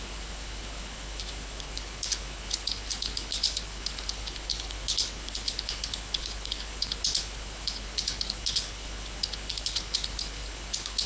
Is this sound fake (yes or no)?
yes